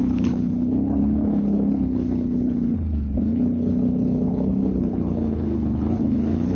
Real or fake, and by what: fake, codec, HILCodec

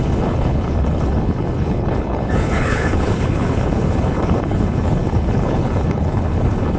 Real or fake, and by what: fake, codec, HILCodec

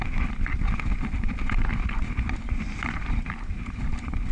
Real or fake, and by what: real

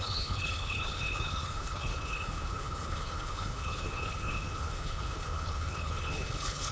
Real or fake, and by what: fake, codec, HILCodec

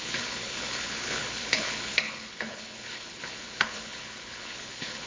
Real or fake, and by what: fake, codec, HILCodec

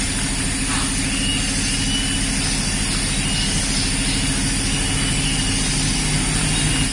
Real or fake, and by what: real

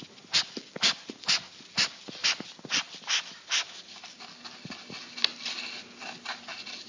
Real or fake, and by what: real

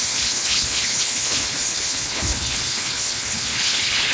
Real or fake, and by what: fake, codec, HILCodec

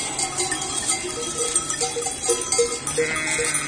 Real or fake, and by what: real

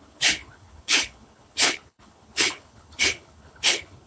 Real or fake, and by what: fake, codec, HILCodec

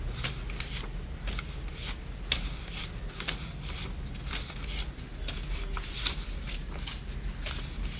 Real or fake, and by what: real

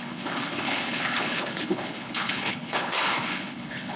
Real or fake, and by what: fake, codec, HILCodec